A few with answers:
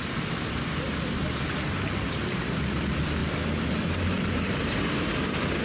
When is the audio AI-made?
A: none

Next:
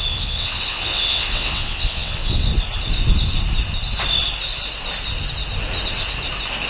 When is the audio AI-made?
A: 0.0-2.5